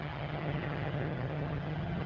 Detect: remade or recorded remade